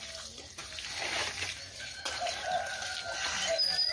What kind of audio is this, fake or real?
real